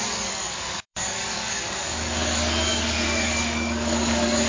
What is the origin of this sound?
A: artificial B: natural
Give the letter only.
A